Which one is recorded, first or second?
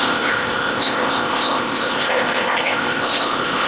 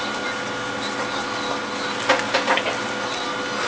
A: second